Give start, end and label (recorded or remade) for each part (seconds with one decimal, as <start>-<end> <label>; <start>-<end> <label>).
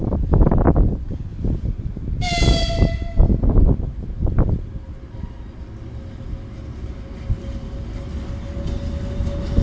0.0-9.6 recorded